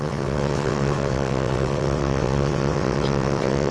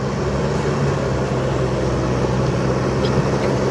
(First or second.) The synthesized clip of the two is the first